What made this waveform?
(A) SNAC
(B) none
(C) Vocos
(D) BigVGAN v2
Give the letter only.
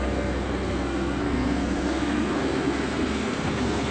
A